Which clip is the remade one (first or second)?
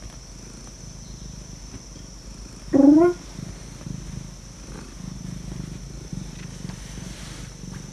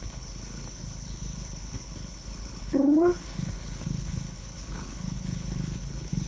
second